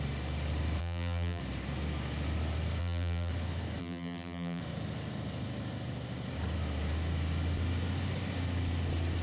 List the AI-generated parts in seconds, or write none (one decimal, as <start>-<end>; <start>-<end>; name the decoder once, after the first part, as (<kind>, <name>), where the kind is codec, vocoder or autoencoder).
0.8-1.4 (vocoder, BigVGAN v2); 2.8-3.3; 3.8-4.6